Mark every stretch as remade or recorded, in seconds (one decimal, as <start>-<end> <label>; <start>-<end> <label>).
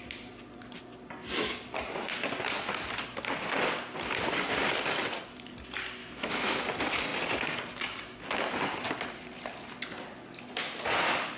0.0-6.0 recorded; 6.0-6.6 remade; 6.6-11.4 recorded